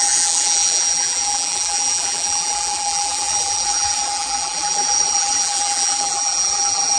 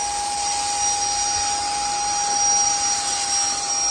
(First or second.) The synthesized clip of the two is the first